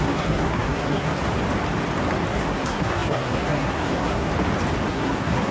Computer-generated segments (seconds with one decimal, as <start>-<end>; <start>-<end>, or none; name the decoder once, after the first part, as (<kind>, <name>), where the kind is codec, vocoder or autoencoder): 0.0-1.1 (codec, SNAC); 2.3-4.3; 4.9-5.5